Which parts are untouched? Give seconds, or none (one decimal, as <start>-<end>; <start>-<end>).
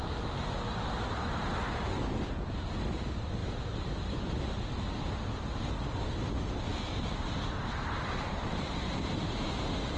0.0-3.4; 4.4-6.7; 9.2-10.0